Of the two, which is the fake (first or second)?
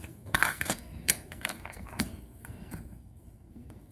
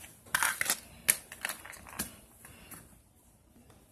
first